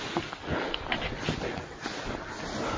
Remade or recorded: recorded